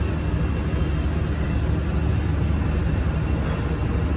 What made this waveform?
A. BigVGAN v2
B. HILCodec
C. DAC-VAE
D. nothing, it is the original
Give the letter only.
D